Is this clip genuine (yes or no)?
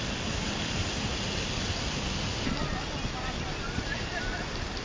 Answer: yes